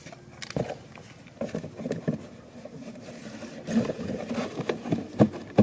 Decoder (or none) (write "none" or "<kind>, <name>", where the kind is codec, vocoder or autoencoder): none